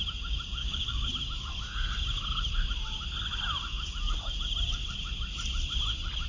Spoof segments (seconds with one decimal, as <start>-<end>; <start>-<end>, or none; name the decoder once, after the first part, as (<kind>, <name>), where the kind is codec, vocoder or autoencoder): 0.6-1.1 (codec, DAC)